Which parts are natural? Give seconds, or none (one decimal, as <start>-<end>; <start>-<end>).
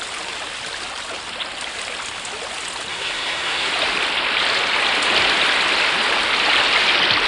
0.0-2.9; 3.7-7.3